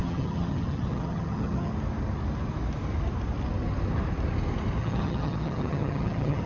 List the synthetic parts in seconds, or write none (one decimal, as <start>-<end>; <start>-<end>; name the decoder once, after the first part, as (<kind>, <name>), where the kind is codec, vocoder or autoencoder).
0.0-1.7 (vocoder, HiFi-GAN); 4.8-6.5